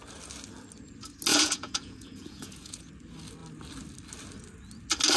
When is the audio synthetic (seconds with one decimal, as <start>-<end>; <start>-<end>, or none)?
1.3-2.9